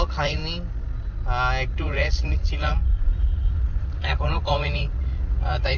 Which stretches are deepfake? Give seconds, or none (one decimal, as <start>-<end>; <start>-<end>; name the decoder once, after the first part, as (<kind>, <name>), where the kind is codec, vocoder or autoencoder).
0.0-0.4 (vocoder, Vocos); 1.7-5.8